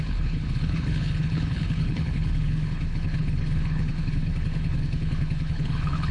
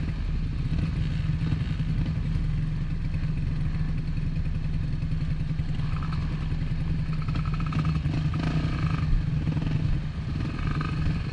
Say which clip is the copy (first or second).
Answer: first